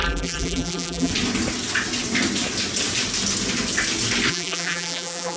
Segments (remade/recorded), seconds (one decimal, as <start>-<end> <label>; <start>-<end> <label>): 0.0-1.1 remade; 1.1-4.3 recorded; 4.3-5.4 remade